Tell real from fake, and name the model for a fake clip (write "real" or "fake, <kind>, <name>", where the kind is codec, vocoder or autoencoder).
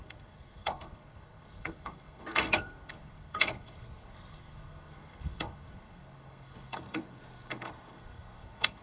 fake, codec, SNAC